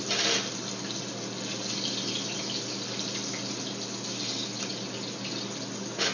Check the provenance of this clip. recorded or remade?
recorded